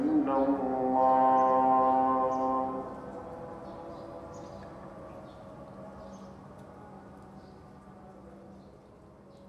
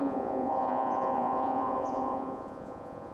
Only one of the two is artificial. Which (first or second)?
second